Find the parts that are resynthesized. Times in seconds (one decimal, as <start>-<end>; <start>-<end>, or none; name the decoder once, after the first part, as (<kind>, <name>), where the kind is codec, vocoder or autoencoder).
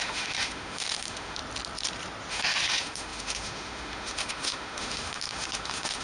0.0-1.4 (autoencoder, DAC-VAE); 2.3-6.0